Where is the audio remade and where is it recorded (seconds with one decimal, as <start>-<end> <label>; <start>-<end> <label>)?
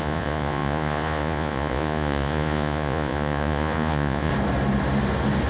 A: 0.0-4.3 remade; 4.3-5.5 recorded